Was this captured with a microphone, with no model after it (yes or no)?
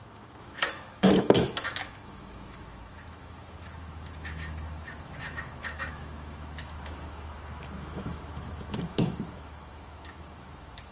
no